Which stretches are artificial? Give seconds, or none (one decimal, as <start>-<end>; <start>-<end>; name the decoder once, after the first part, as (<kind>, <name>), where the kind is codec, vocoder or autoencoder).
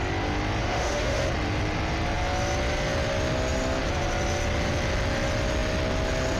0.6-1.2 (autoencoder, DAC-VAE)